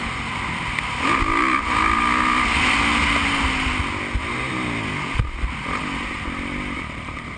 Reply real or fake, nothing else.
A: real